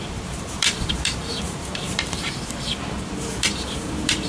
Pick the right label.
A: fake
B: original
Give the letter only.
A